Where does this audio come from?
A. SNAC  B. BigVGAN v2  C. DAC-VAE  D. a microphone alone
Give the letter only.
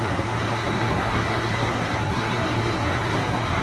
A